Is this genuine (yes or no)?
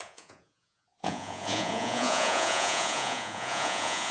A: no